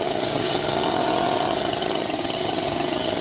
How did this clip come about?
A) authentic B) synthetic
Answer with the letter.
B